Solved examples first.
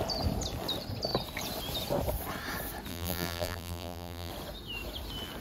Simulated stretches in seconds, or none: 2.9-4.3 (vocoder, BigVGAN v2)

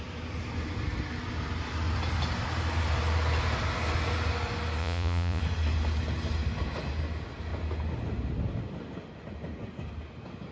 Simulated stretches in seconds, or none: 4.8-5.4 (vocoder, Vocos)

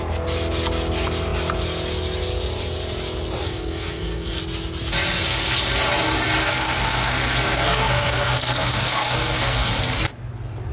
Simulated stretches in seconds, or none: 3.4-4.4 (codec, SNAC); 6.4-9.7

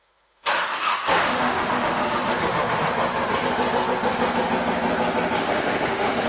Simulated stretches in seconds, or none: 0.0-2.9 (autoencoder, DAC-VAE); 5.4-6.3

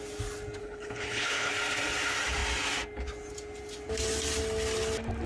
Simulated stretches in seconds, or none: 0.6-1.5 (codec, HILCodec)

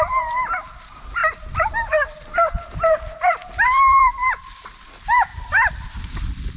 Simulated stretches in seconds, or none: 0.0-1.2 (vocoder, BigVGAN v2); 3.2-5.3